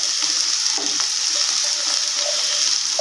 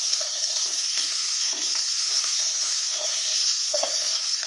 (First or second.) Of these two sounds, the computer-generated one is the second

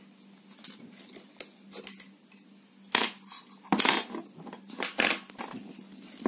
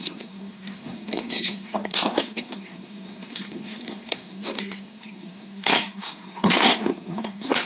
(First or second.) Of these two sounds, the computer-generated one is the second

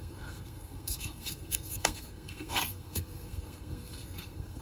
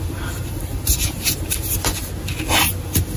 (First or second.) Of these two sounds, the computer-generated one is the first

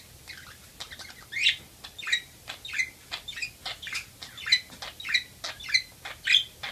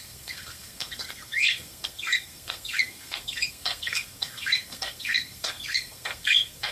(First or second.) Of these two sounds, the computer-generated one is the second